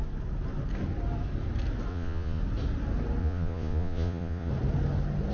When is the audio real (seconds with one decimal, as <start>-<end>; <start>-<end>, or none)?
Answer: 0.0-1.9; 2.4-3.2; 4.5-5.3